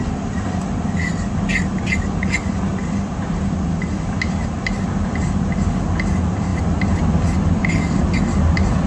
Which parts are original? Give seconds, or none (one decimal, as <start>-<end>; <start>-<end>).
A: 0.0-8.9